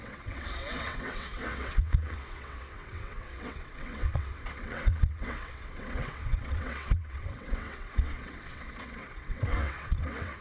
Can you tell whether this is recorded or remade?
remade